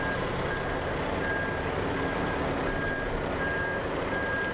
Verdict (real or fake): real